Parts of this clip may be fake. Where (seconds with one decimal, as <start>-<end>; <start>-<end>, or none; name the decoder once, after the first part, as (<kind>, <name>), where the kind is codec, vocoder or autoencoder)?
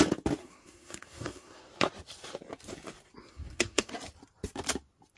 0.4-1.7 (codec, SNAC); 3.3-3.9